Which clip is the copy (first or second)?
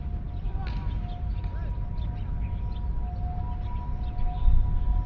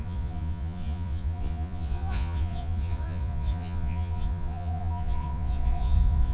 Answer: second